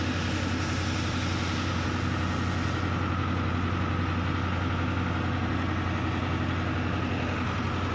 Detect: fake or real real